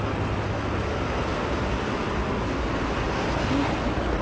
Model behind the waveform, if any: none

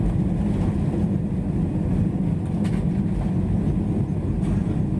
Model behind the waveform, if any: none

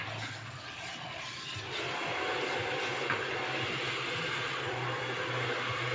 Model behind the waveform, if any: none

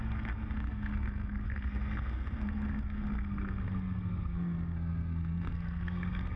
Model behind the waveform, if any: codec, SNAC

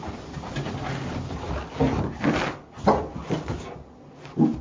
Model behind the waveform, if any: none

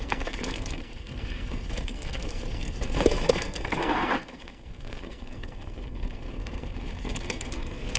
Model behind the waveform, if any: codec, SNAC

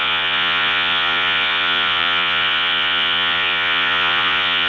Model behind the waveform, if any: vocoder, Vocos